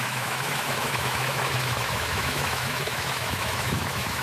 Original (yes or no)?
no